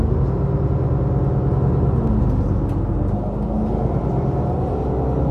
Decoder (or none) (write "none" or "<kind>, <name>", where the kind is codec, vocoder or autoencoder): none